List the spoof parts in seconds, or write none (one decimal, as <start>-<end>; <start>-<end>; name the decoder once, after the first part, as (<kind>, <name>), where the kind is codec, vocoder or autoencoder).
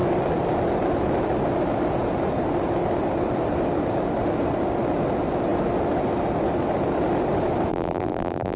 7.7-8.6 (vocoder, BigVGAN v2)